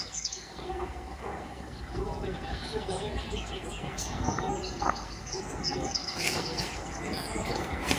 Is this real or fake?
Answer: fake